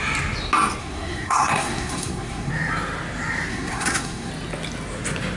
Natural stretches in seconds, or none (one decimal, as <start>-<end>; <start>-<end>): 0.0-0.8; 2.5-3.5; 4.3-5.4